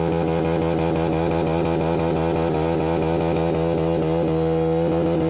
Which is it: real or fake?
real